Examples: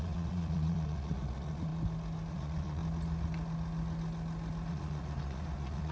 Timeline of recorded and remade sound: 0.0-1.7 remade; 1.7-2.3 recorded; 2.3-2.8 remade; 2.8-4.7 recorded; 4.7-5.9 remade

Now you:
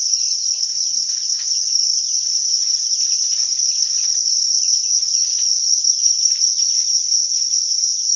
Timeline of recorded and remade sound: 0.0-4.9 recorded; 4.9-5.8 remade; 5.8-8.2 recorded